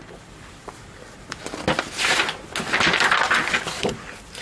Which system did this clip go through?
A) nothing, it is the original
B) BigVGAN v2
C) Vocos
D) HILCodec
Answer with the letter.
A